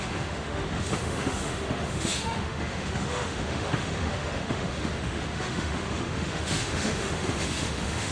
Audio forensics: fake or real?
fake